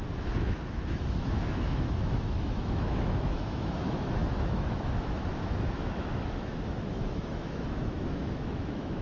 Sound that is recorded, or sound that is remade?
remade